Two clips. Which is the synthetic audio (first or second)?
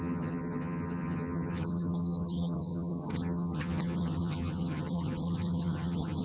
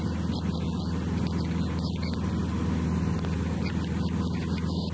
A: first